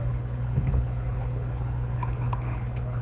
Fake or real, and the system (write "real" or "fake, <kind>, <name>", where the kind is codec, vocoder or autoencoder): fake, codec, HILCodec